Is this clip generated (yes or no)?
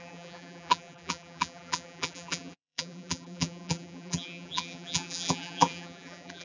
yes